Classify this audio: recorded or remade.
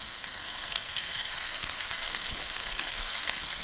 remade